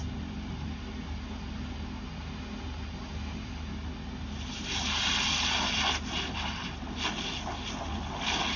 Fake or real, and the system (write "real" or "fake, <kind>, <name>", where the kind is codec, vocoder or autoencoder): real